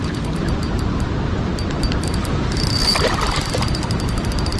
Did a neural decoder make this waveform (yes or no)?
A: no